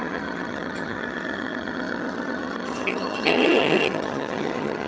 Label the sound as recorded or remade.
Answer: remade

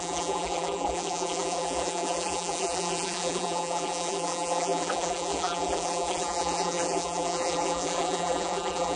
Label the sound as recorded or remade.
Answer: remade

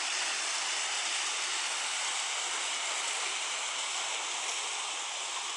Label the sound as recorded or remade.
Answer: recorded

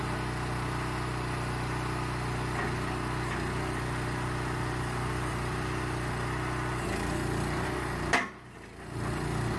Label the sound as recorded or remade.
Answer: recorded